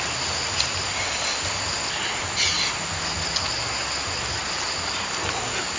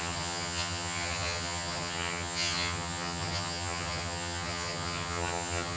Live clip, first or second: first